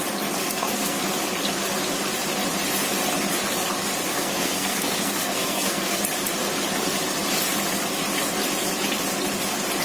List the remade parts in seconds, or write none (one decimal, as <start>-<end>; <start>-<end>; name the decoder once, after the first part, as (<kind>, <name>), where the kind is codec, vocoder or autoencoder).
0.4-1.0 (codec, SNAC); 4.1-6.0